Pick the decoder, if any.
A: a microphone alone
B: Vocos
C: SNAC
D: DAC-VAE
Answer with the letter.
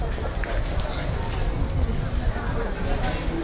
A